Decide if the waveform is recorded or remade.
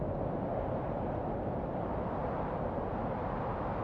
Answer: recorded